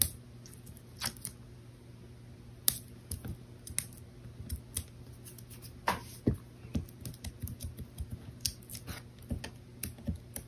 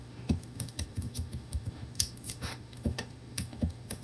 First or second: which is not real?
second